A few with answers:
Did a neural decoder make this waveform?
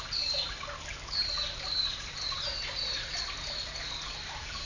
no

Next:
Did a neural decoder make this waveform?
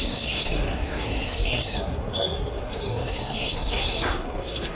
yes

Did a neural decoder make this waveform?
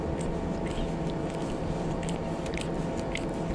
no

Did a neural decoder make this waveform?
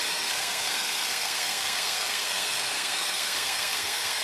yes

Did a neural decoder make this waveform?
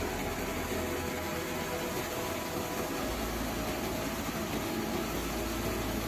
no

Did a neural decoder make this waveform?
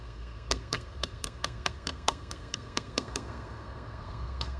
yes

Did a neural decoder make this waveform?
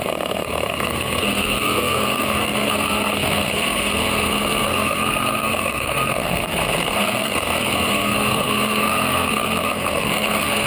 yes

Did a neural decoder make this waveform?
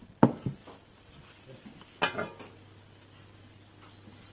no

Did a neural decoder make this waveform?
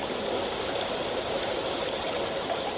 no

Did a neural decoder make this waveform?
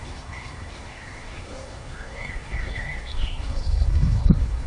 yes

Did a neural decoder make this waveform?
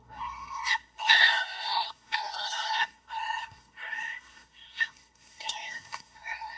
yes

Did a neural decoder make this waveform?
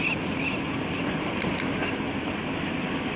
no